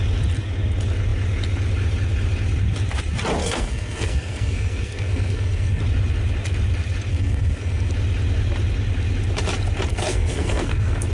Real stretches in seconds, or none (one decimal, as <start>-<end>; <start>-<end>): 0.0-3.4; 5.8-7.1; 7.9-9.9